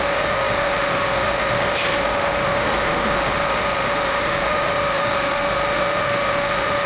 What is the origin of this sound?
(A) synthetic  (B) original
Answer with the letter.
A